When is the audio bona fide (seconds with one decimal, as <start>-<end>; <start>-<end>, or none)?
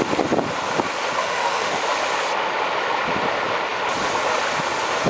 0.0-1.2; 1.8-5.1